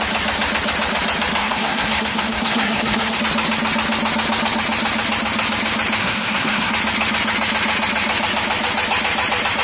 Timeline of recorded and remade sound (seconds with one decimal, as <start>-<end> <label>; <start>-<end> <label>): 0.0-1.4 recorded; 1.4-3.2 remade; 3.2-6.0 recorded; 6.0-6.7 remade; 6.7-9.6 recorded